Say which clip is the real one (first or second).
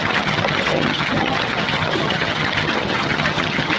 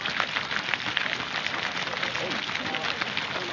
second